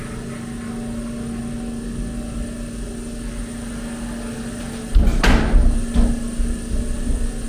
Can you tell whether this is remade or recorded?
recorded